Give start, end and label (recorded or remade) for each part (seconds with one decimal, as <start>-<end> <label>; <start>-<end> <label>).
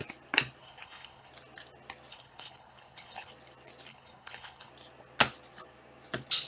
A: 0.0-0.6 recorded; 0.6-1.3 remade; 1.3-2.1 recorded; 2.1-3.3 remade; 3.3-3.9 recorded; 3.9-4.7 remade; 4.7-6.5 recorded